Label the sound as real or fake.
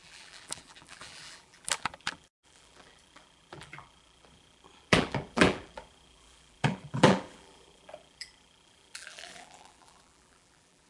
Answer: fake